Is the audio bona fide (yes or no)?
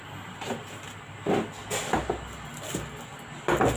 yes